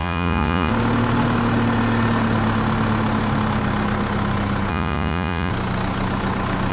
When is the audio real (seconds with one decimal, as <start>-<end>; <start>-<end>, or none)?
0.7-4.7; 5.5-6.7